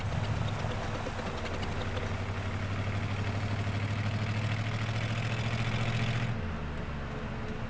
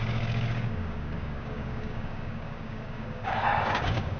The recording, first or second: first